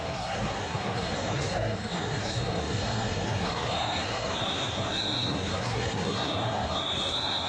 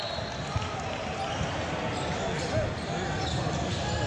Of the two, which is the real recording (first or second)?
second